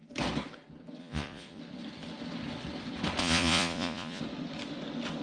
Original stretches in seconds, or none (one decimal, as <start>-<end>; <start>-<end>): 0.0-1.0; 1.6-3.2; 4.2-5.2

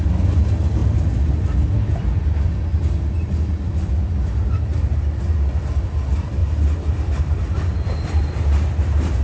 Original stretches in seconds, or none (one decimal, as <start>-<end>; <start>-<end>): 0.0-9.2